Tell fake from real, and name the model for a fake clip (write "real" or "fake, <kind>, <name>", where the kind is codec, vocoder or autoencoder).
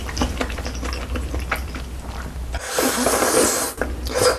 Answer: real